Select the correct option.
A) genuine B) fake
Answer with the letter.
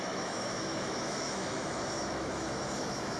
B